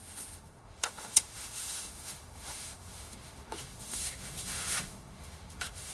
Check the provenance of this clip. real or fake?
fake